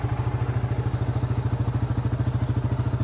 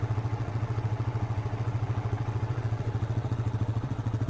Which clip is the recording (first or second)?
first